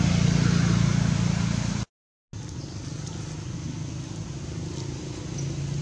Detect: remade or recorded recorded